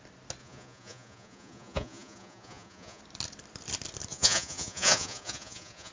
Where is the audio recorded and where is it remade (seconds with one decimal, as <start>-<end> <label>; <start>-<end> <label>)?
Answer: 0.0-0.4 recorded; 0.4-3.0 remade; 3.0-4.1 recorded; 4.1-5.9 remade